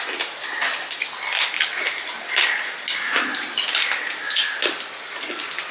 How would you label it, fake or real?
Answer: real